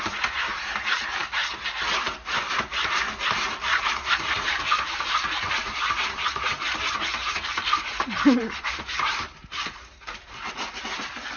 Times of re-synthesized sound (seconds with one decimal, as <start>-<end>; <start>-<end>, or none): 0.0-1.2; 2.5-11.4

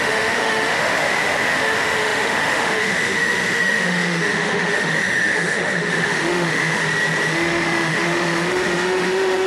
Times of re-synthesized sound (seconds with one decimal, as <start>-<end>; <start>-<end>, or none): 0.0-6.8; 7.3-9.5

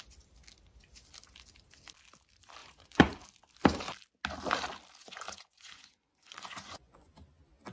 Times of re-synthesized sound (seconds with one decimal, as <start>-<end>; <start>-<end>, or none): 2.6-3.2; 5.0-7.1

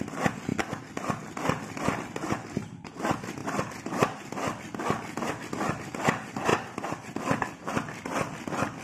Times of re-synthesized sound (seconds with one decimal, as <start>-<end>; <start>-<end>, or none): none

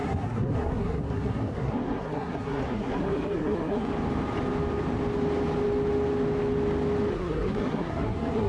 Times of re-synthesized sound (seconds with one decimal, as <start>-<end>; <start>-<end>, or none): 0.0-3.9; 7.1-8.5